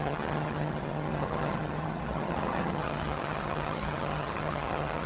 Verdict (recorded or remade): remade